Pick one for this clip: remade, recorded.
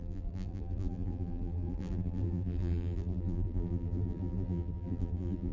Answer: remade